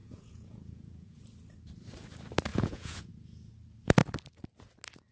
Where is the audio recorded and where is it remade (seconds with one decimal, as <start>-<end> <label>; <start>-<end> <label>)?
0.0-1.2 remade; 1.2-2.5 recorded; 2.5-3.1 remade; 3.1-5.1 recorded